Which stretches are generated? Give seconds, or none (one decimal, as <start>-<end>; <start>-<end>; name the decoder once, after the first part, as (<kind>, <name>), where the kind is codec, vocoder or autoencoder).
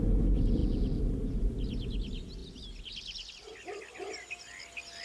none